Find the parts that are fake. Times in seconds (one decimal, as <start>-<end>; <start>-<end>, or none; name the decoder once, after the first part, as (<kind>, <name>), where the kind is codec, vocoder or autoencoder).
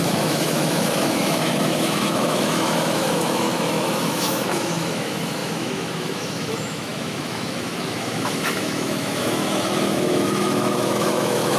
0.0-11.6 (autoencoder, DAC-VAE)